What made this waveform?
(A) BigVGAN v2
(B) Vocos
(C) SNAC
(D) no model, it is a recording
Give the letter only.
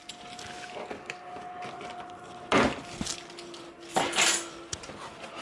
D